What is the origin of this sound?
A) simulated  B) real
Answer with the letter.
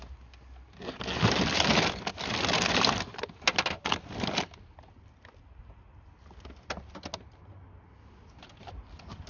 B